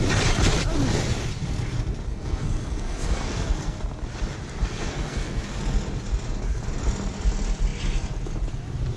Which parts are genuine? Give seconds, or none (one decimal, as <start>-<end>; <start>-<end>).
0.0-2.1; 3.8-4.6; 5.6-9.0